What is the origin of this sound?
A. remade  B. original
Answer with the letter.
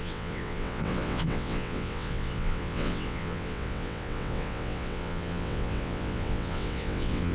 A